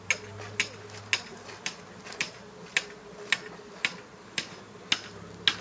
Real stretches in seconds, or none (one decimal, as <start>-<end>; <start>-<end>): 0.0-5.6